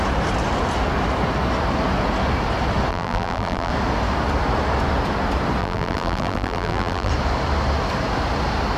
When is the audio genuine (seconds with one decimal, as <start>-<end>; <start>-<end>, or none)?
0.0-2.9; 3.7-5.6; 7.1-8.8